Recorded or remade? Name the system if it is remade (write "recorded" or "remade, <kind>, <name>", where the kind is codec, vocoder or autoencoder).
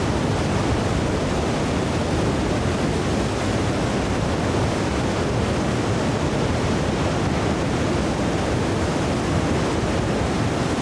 recorded